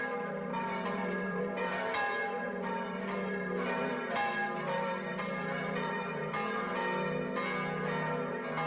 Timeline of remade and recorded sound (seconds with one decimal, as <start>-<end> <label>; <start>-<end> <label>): 0.0-6.8 remade; 6.8-8.7 recorded